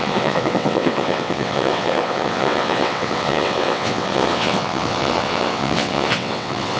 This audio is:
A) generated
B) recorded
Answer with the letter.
A